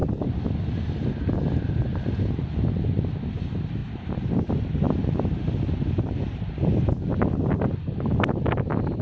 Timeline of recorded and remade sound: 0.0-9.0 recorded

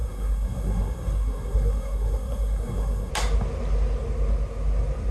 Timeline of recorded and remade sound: 0.0-3.1 remade; 3.1-5.1 recorded

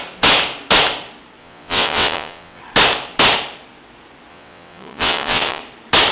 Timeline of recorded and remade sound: 0.0-1.4 recorded; 1.4-2.6 remade; 2.6-4.3 recorded; 4.3-5.6 remade; 5.6-6.1 recorded

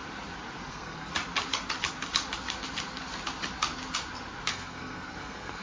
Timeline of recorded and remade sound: 0.0-0.7 recorded; 0.7-1.1 remade; 1.1-4.5 recorded; 4.5-5.6 remade

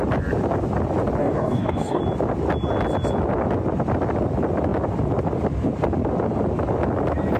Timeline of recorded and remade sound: 0.0-1.2 recorded; 1.2-2.0 remade; 2.0-7.4 recorded

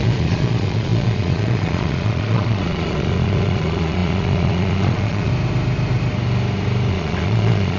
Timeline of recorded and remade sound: 0.0-5.3 remade; 5.3-6.9 recorded; 6.9-7.8 remade